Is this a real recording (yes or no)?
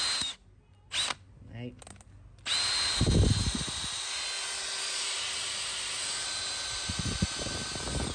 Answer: yes